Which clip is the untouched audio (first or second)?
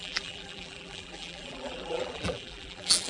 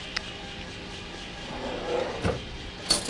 second